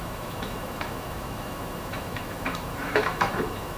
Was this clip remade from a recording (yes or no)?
yes